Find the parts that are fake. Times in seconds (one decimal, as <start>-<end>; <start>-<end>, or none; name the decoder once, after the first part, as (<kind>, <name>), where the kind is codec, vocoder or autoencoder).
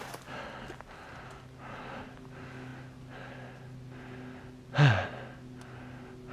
none